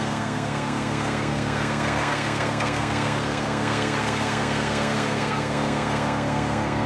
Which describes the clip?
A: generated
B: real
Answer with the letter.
A